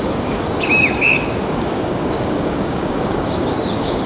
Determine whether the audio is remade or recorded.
remade